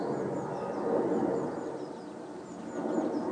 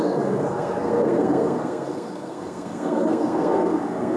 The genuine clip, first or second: first